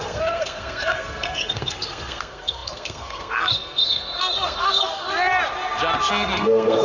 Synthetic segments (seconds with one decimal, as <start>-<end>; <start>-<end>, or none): 0.0-5.3; 6.1-6.8